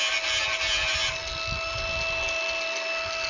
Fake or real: real